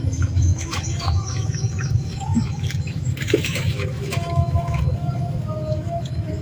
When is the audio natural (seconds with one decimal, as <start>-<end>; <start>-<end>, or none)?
none